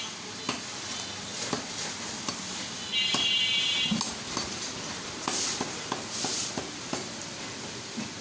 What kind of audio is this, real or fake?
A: real